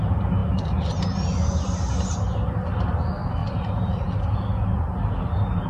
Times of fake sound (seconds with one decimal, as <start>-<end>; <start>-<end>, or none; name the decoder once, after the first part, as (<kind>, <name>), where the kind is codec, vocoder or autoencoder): 3.4-4.0 (vocoder, BigVGAN v2)